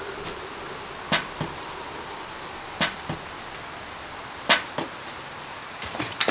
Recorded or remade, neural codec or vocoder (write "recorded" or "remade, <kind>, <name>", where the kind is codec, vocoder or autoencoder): recorded